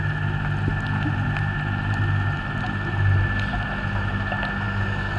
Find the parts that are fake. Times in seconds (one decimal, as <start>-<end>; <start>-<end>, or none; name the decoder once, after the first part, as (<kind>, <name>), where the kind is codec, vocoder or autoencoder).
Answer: none